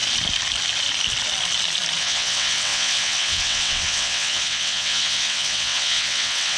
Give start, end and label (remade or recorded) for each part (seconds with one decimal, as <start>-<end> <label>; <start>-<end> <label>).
0.0-2.0 recorded; 2.0-6.6 remade